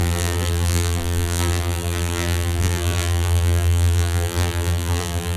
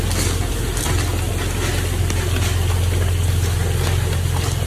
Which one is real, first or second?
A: second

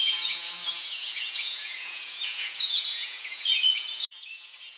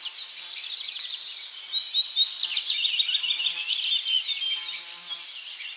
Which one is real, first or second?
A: second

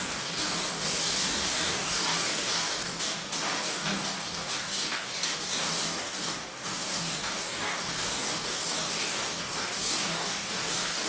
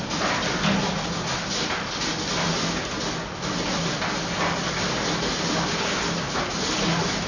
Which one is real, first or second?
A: second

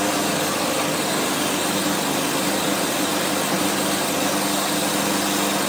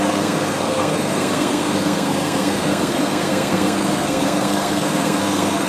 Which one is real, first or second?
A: first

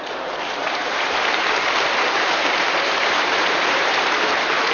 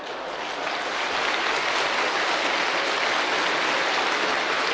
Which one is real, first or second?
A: second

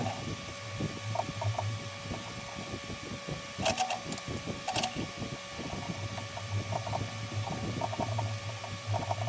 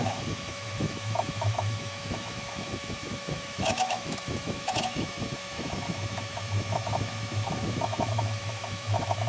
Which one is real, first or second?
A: first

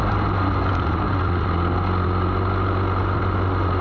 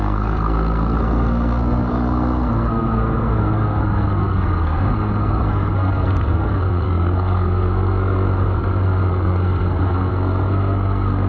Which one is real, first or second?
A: first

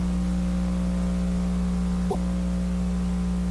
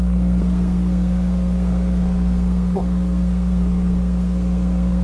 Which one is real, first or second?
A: first